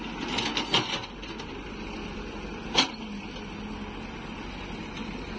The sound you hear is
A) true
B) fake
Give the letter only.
A